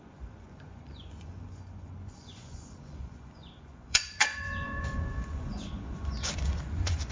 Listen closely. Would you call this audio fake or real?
fake